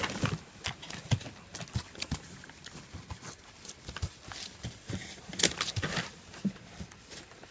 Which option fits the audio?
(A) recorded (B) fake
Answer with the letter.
A